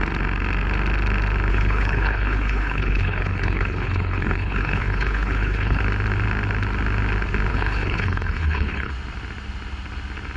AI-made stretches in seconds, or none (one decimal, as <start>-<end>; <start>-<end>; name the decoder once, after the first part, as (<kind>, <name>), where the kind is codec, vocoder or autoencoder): 1.5-5.8 (codec, HILCodec); 7.5-8.9